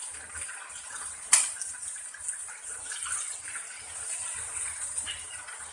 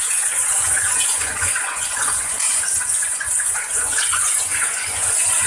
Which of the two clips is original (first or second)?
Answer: first